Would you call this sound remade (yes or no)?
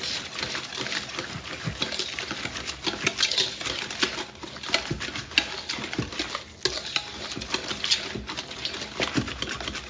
no